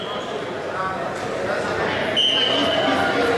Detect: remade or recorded recorded